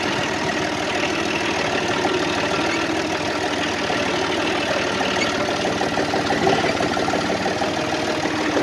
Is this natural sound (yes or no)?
yes